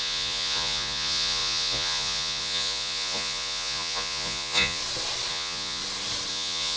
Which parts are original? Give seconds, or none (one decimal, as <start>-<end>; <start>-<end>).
4.8-5.3; 5.8-6.3